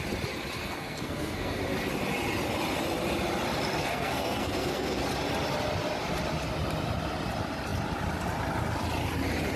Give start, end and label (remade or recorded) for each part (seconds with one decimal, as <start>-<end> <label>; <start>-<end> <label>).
0.0-0.6 recorded; 0.6-1.6 remade; 1.6-3.8 recorded; 3.8-5.0 remade; 5.0-9.6 recorded